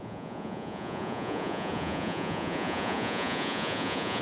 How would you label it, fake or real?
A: fake